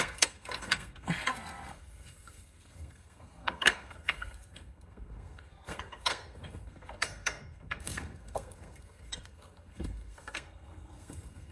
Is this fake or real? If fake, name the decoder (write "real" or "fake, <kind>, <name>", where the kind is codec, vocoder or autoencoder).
fake, codec, SNAC